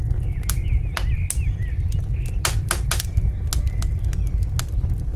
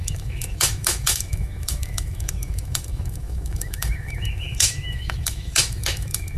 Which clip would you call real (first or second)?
first